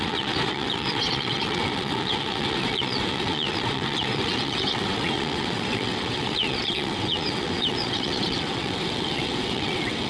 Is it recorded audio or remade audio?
remade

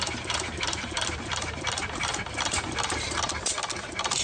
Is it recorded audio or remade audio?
recorded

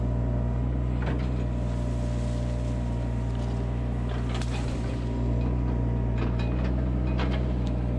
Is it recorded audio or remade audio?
recorded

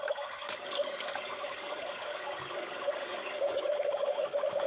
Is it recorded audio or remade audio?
remade